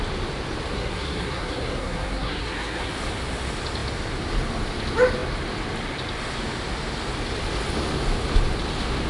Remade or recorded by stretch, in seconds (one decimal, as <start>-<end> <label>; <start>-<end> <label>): 0.0-0.7 recorded; 0.7-2.9 remade; 2.9-9.1 recorded